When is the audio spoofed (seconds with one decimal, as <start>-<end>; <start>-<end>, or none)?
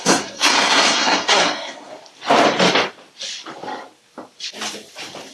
0.0-1.9